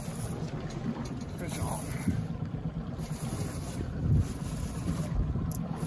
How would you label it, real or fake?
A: fake